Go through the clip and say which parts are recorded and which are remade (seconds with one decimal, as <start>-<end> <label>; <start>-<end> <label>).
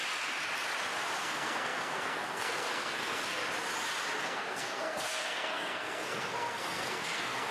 0.0-1.2 recorded; 1.2-3.4 remade; 3.4-4.2 recorded; 4.2-7.5 remade